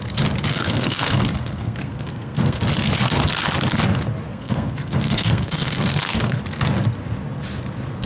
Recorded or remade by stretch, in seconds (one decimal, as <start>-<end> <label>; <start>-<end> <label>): 0.0-0.5 recorded; 0.5-2.6 remade; 2.6-4.3 recorded; 4.3-6.4 remade; 6.4-8.1 recorded